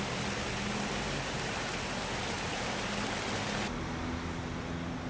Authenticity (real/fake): real